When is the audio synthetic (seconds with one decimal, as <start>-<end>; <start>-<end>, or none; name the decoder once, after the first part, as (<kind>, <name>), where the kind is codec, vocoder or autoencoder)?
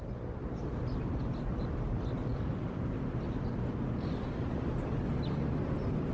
none